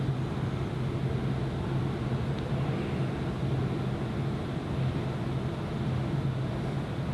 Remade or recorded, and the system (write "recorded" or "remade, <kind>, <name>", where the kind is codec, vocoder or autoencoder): recorded